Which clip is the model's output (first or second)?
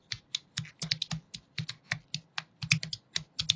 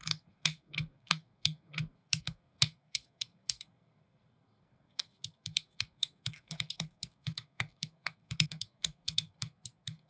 second